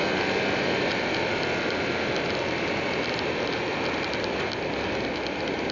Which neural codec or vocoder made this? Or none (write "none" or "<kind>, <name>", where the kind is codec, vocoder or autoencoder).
none